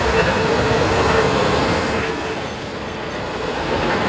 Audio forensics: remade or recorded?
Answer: remade